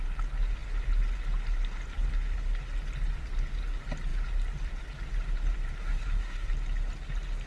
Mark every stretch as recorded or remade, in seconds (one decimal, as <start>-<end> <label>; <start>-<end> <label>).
0.0-5.8 recorded; 5.8-6.5 remade; 6.5-7.5 recorded